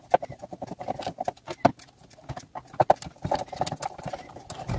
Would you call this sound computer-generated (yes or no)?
no